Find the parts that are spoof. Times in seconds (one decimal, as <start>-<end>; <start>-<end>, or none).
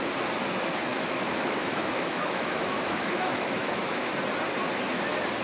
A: 0.9-4.1